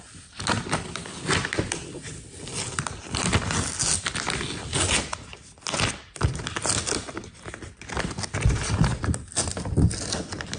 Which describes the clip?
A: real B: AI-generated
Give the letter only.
A